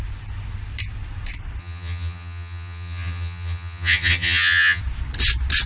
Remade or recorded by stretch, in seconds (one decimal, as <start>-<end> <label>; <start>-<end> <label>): 0.0-1.6 recorded; 1.6-4.8 remade; 4.8-5.7 recorded